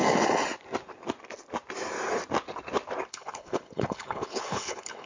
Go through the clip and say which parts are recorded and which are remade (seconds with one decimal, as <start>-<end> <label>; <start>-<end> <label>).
0.0-3.1 recorded; 3.1-5.1 remade